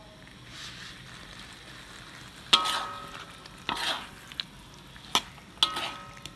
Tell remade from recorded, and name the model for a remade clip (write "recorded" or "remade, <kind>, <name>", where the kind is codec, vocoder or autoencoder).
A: recorded